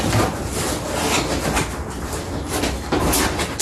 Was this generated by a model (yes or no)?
no